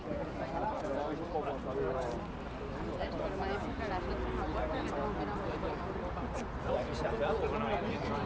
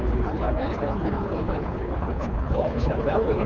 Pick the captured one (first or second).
first